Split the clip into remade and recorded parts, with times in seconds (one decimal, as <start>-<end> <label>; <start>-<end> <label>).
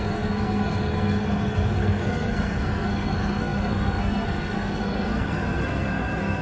0.0-6.4 remade